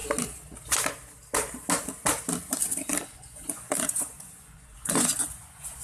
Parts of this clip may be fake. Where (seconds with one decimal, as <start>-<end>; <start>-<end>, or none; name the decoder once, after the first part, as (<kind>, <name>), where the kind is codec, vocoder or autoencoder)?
2.9-5.8 (vocoder, Vocos)